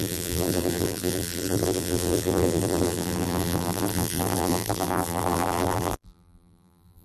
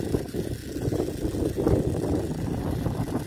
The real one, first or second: second